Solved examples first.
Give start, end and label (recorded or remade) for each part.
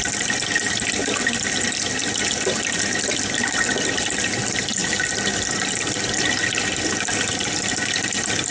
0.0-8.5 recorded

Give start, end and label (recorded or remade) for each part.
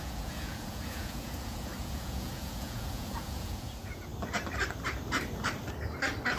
0.0-4.1 remade; 4.1-6.4 recorded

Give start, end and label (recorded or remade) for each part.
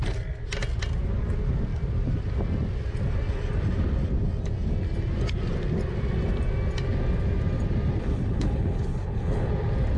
0.0-8.0 recorded; 8.0-9.5 remade; 9.5-10.0 recorded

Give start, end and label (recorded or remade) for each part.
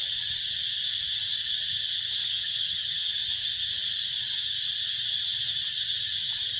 0.0-2.2 recorded; 2.2-3.1 remade; 3.1-6.6 recorded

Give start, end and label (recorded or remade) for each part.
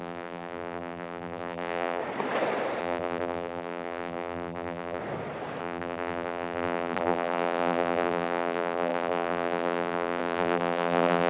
0.0-2.0 remade; 2.0-2.8 recorded; 2.8-5.0 remade; 5.0-5.6 recorded; 5.6-11.3 remade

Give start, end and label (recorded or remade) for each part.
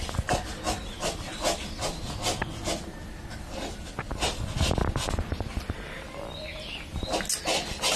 0.0-8.0 recorded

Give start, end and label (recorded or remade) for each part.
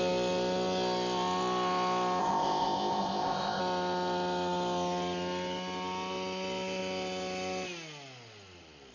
0.0-2.2 recorded; 2.2-3.6 remade; 3.6-8.9 recorded